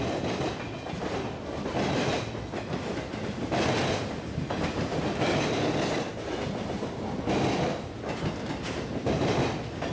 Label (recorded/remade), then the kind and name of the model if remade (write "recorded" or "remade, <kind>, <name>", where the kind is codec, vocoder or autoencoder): recorded